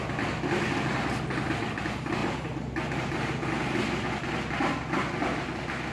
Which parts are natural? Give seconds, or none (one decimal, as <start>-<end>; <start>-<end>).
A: 0.0-5.9